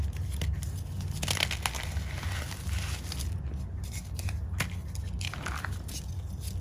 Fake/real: real